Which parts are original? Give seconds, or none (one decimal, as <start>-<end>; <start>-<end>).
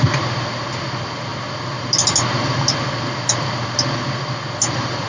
0.0-5.1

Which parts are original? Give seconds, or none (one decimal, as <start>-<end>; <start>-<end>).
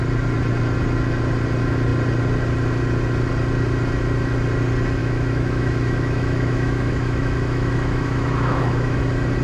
0.0-5.0; 9.0-9.4